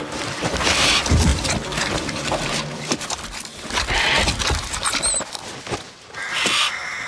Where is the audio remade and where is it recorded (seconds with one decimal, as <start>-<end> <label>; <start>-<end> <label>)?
0.0-1.3 recorded; 1.3-3.2 remade; 3.2-7.1 recorded